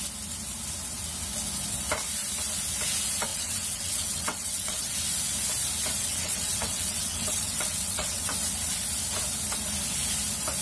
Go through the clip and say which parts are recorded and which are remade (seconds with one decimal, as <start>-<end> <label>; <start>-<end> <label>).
0.0-3.3 recorded; 3.3-4.9 remade; 4.9-6.0 recorded; 6.0-8.3 remade; 8.3-10.6 recorded